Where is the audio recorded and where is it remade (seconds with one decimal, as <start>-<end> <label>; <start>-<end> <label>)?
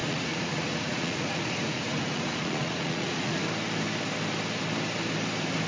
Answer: 0.0-3.4 remade; 3.4-5.7 recorded